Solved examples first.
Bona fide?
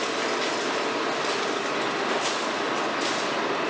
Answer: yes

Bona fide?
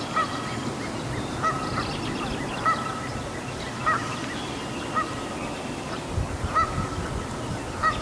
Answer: yes